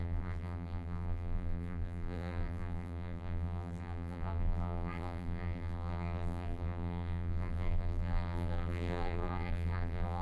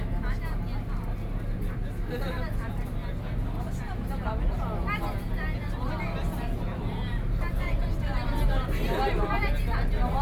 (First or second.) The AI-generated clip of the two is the first